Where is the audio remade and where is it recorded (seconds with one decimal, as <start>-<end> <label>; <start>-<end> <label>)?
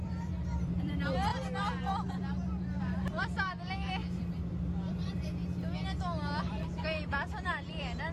0.0-1.3 remade; 1.3-2.8 recorded; 2.8-5.4 remade; 5.4-6.4 recorded; 6.4-8.1 remade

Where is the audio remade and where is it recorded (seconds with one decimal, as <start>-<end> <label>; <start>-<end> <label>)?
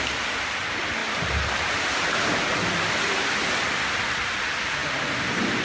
0.0-5.6 recorded